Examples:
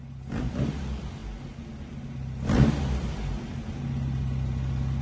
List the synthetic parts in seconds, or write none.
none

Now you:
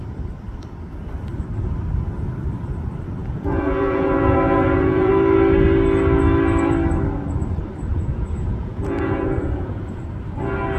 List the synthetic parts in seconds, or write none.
3.2-5.1 (vocoder, Vocos); 7.9-10.0

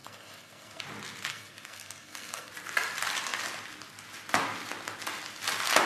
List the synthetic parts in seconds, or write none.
0.0-0.8 (codec, SNAC); 1.3-2.5